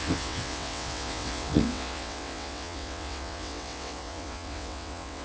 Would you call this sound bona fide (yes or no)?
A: no